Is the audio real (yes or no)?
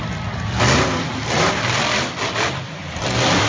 no